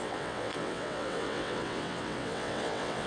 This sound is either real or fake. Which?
fake